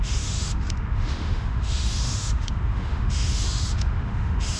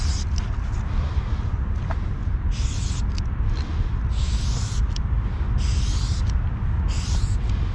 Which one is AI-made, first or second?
first